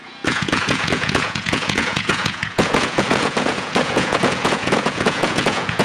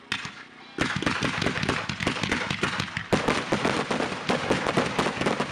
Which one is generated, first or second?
first